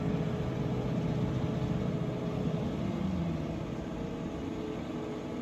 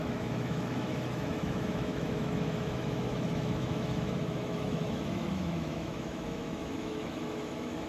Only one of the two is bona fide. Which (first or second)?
first